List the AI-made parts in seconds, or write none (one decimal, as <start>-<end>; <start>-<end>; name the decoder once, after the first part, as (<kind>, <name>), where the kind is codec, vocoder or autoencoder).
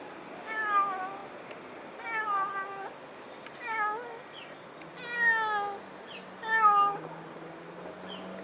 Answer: none